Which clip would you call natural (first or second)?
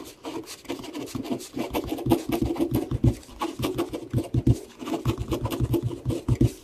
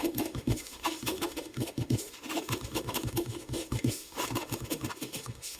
first